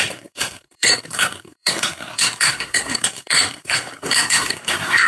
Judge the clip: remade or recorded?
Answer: remade